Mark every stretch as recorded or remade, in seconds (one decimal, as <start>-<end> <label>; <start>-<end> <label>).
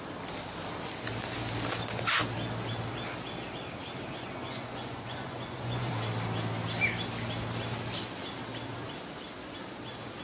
0.0-4.1 recorded; 4.1-5.9 remade; 5.9-10.2 recorded